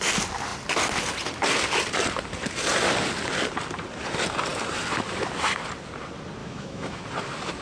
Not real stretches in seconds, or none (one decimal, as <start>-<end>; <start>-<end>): 6.4-7.0